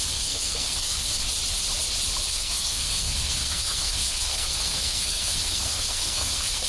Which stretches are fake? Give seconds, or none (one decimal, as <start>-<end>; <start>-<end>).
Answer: 0.0-1.2; 2.3-6.7